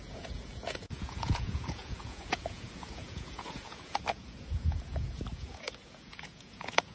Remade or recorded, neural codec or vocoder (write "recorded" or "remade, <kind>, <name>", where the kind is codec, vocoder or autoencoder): remade, vocoder, Vocos